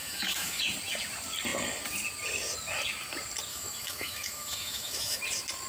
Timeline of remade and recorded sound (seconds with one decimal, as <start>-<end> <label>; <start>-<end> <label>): 0.0-0.6 remade; 0.6-3.5 recorded; 3.5-5.2 remade; 5.2-5.7 recorded